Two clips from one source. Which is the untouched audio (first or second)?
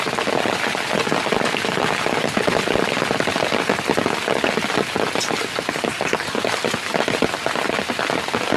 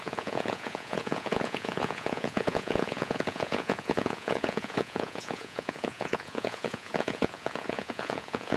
first